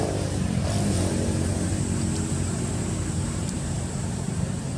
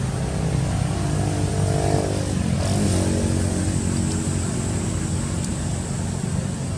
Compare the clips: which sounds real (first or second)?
second